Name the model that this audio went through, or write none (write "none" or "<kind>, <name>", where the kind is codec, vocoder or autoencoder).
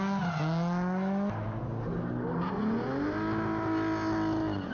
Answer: none